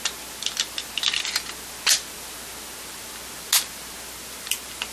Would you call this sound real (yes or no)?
yes